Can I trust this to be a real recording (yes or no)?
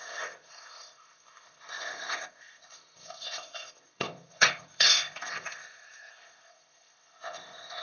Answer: no